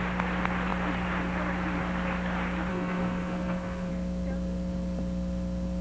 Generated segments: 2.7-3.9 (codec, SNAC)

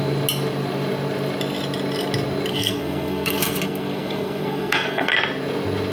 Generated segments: 2.5-5.1 (codec, SNAC)

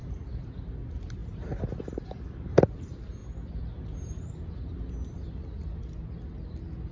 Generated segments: none

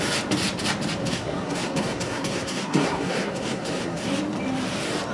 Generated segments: 1.0-4.1 (codec, SNAC)

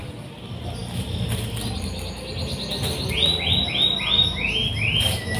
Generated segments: none

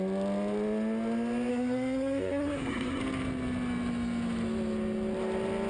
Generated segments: 1.5-3.0 (codec, SNAC)

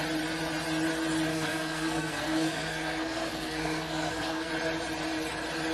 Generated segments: 1.3-4.5 (codec, SNAC)

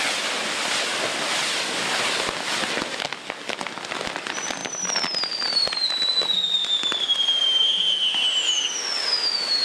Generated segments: none